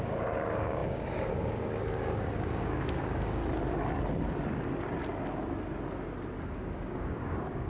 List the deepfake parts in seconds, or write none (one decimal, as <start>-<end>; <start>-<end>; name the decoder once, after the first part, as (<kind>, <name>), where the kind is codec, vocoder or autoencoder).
0.0-3.4 (codec, DAC); 6.4-7.7